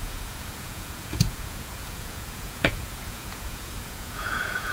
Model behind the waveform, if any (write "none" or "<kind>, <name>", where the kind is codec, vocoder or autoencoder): vocoder, Vocos